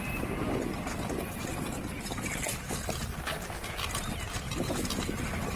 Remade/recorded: recorded